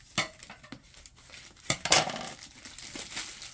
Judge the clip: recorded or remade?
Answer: recorded